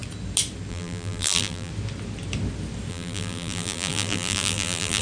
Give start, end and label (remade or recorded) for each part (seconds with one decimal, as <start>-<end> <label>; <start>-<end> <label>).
0.0-0.7 recorded; 0.7-1.7 remade; 1.7-2.9 recorded; 2.9-5.0 remade